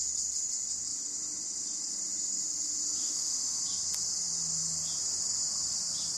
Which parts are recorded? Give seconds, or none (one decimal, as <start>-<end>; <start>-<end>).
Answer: 0.0-3.0; 3.6-6.2

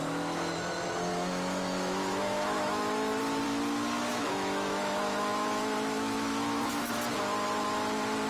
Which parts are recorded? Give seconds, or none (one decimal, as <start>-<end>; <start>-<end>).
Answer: 0.0-1.1; 3.2-4.1; 6.9-8.3

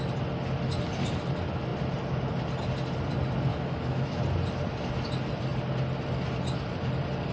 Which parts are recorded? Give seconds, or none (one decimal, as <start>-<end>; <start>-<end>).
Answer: 0.0-3.5; 4.2-7.3

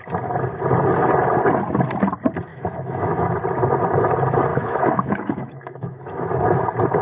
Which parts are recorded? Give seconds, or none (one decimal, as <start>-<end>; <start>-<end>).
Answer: 0.0-2.5; 3.3-4.5; 6.3-7.0

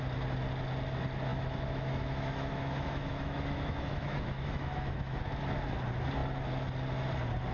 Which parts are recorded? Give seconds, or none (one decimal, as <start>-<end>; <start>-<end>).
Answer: 0.0-1.3; 5.4-7.5